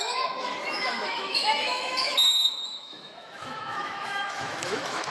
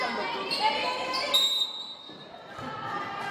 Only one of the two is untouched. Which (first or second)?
second